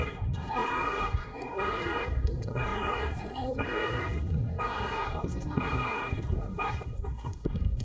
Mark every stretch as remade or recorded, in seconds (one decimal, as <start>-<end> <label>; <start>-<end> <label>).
0.0-7.8 remade